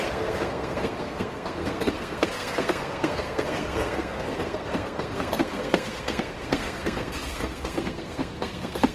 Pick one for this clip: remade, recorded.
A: remade